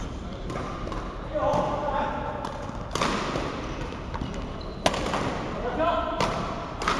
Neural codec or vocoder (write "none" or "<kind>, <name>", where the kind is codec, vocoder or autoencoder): none